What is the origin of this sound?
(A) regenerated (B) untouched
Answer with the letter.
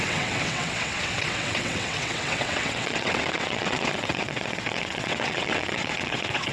A